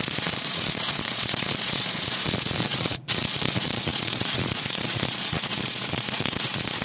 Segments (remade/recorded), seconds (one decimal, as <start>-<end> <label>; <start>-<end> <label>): 0.0-6.8 remade